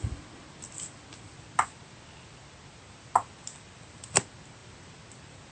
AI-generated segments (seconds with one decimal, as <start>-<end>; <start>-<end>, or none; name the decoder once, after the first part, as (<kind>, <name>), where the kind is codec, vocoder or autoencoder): none